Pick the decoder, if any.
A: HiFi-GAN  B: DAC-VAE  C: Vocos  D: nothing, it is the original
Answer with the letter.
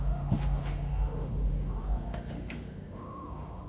B